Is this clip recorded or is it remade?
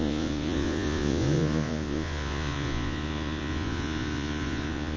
remade